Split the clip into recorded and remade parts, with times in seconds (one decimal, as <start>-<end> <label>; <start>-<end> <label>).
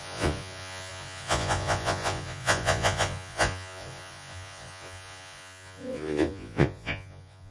0.0-7.5 remade